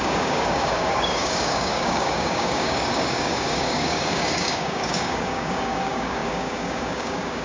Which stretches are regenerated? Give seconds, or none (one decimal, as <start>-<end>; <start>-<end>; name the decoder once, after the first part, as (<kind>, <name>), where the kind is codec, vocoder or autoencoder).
0.0-7.4 (codec, DAC)

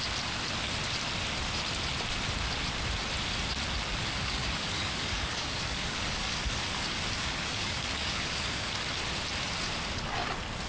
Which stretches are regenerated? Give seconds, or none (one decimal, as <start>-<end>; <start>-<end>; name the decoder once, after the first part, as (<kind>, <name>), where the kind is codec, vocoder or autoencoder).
4.0-8.7 (codec, DAC)

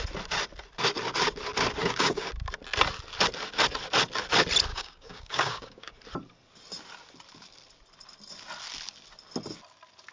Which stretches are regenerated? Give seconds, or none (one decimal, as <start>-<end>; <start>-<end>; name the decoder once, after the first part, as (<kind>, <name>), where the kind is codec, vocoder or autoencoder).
1.8-2.3 (codec, DAC); 4.7-5.9

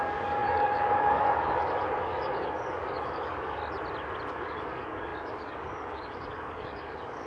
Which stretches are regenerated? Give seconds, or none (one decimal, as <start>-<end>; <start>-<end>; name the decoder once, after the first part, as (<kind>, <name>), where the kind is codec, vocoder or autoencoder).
0.0-3.6 (codec, DAC); 4.3-7.3

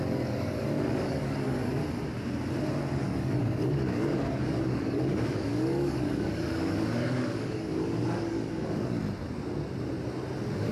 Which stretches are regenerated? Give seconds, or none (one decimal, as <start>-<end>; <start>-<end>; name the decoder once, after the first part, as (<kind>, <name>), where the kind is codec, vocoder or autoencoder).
0.0-1.8 (codec, DAC); 3.0-9.0